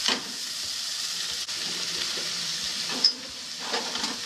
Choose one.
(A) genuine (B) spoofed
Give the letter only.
B